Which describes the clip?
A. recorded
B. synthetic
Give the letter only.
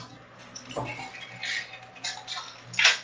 A